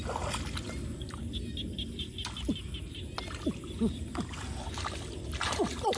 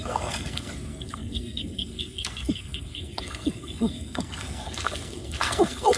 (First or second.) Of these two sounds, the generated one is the second